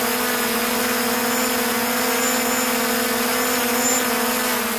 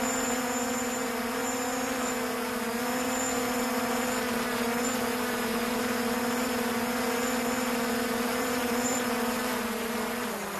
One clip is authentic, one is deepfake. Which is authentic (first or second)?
first